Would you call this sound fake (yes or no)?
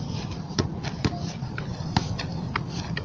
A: no